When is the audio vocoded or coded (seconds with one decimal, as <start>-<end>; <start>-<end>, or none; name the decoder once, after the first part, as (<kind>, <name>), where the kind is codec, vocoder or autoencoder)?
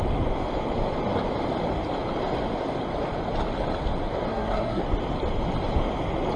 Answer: 4.3-4.8 (codec, SNAC)